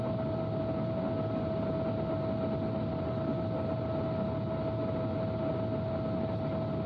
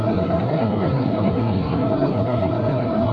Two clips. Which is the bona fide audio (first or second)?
first